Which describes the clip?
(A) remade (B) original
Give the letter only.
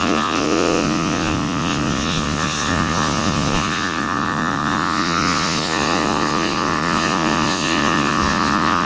A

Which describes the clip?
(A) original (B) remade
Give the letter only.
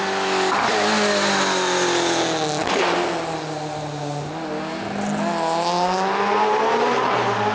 A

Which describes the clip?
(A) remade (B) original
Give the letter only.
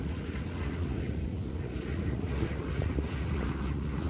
A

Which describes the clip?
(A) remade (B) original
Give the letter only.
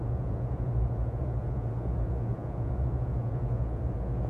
A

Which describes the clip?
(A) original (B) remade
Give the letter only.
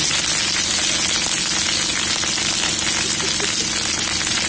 A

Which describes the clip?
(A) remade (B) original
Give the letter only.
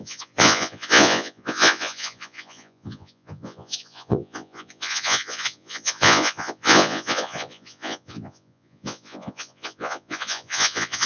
A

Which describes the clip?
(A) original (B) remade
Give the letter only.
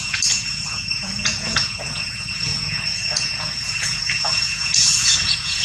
B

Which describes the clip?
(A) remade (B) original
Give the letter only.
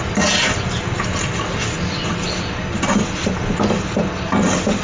B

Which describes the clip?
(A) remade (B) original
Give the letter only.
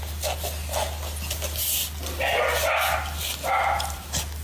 B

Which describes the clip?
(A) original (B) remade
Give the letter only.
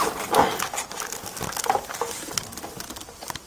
A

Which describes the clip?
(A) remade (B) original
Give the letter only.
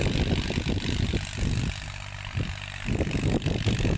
B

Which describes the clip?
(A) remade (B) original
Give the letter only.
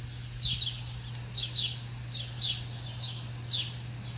B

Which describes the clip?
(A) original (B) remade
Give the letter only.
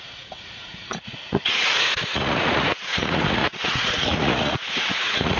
B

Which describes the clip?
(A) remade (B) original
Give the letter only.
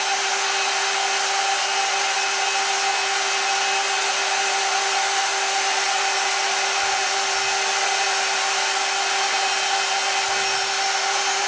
B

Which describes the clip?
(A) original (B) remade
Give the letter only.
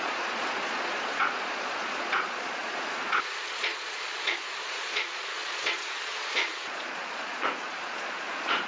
B